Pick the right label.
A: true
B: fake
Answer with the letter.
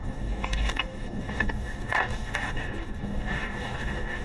B